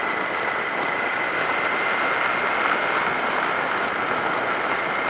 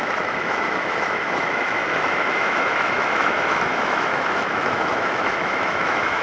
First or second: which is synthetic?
second